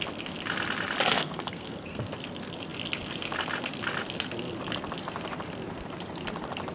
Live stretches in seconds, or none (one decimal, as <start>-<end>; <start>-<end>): 0.0-1.1; 2.1-6.7